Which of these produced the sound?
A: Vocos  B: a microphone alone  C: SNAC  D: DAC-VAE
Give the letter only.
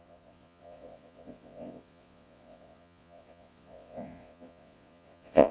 A